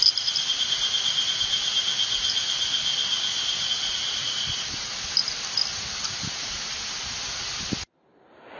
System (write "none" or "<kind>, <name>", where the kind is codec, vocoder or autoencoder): none